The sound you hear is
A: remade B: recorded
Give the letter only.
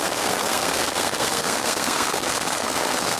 A